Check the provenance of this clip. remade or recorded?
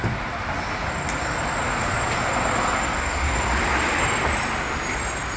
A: recorded